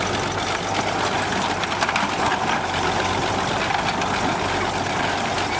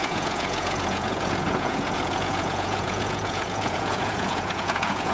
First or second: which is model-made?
second